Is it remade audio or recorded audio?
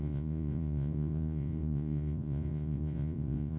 remade